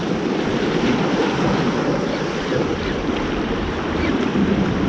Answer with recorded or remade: recorded